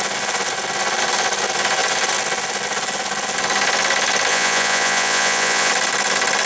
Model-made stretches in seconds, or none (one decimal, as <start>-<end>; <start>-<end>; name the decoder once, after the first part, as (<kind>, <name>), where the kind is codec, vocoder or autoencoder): 4.3-5.7 (vocoder, Vocos)